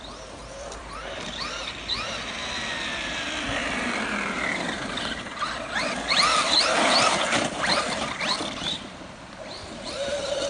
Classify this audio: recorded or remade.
remade